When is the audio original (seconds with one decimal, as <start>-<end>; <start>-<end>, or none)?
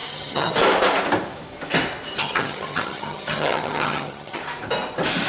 0.5-2.2; 4.4-5.3